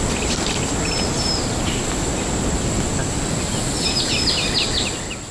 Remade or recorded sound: recorded